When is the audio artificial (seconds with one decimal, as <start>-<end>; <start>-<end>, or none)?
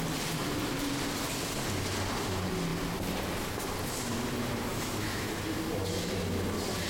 4.7-5.3